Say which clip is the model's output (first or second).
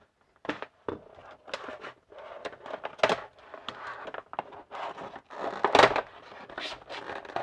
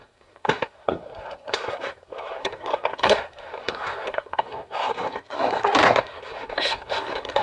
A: second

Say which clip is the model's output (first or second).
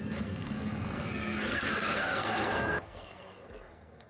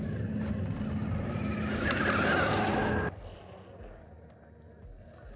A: first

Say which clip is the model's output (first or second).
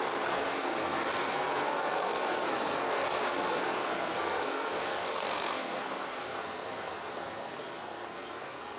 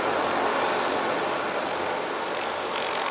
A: first